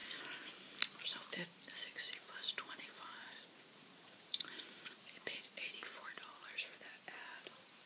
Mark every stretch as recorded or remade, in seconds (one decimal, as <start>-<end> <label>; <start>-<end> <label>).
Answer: 0.0-2.2 recorded; 2.2-6.9 remade; 6.9-7.9 recorded